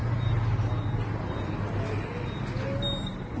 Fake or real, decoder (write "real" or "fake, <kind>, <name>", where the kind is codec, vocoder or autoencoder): real